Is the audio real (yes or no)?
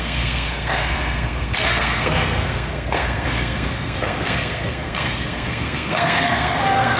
no